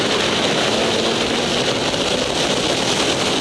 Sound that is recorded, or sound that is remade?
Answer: recorded